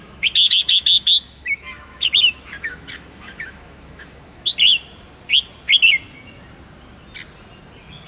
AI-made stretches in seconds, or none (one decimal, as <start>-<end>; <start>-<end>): 0.0-4.5